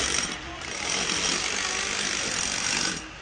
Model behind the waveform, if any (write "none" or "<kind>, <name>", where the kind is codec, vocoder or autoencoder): none